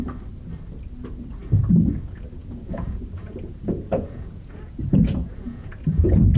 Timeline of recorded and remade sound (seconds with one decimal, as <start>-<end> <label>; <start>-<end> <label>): 0.0-2.4 recorded; 2.4-6.4 remade